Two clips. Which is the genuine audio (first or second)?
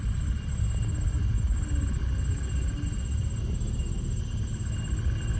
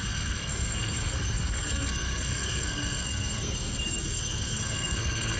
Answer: first